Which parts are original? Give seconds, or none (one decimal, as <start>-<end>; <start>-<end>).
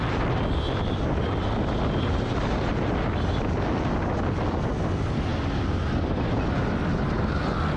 0.0-7.8